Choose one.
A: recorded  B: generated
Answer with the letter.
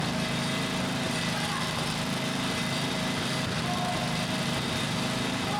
A